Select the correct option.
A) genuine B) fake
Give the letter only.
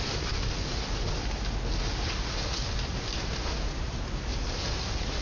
A